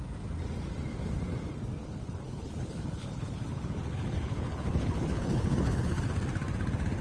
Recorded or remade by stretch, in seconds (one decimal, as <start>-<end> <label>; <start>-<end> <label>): 0.0-1.8 recorded; 1.8-6.0 remade; 6.0-7.0 recorded